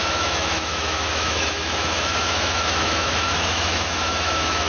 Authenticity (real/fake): fake